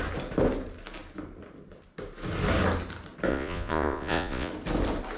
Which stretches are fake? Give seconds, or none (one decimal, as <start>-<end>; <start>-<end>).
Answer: 3.3-4.5